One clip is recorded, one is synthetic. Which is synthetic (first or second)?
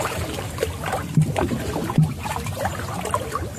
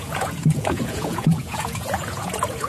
second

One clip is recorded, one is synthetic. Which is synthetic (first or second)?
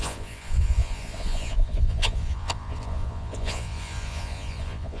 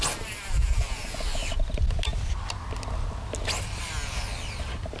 first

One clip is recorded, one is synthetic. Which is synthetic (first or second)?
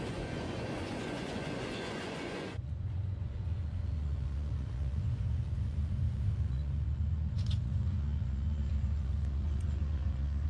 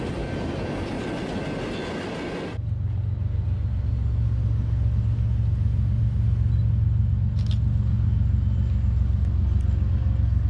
first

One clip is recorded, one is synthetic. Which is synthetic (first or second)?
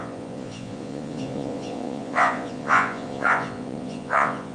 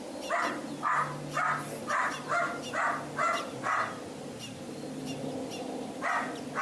first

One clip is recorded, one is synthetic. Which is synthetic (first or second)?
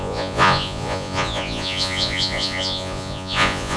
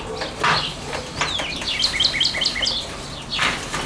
first